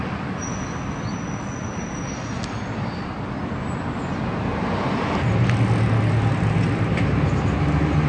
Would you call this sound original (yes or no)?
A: yes